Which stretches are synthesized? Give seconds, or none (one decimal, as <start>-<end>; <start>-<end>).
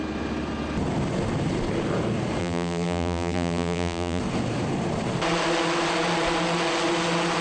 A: 2.4-4.2